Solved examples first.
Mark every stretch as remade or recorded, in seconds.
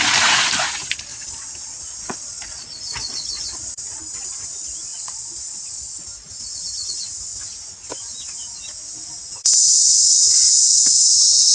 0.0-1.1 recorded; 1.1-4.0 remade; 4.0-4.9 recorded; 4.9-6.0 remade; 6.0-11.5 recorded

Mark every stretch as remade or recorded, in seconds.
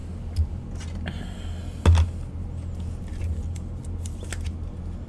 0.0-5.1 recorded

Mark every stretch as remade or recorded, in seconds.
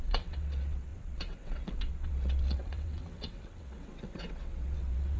0.0-5.2 remade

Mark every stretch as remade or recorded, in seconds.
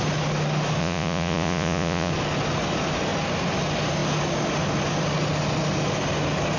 0.0-0.8 recorded; 0.8-2.1 remade; 2.1-6.6 recorded